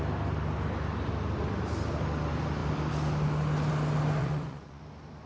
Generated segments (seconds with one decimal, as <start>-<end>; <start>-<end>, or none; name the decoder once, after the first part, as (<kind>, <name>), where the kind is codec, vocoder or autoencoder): 4.2-4.8 (vocoder, Vocos)